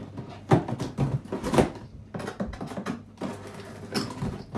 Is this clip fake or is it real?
real